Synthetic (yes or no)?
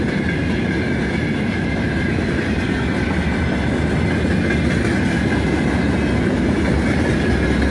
no